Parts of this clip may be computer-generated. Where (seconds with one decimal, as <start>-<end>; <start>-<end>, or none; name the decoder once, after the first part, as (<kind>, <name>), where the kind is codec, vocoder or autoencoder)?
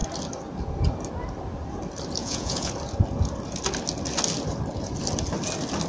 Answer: 2.2-2.7 (vocoder, Vocos)